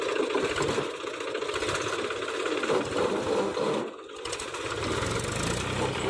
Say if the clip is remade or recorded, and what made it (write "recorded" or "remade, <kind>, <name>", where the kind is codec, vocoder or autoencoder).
recorded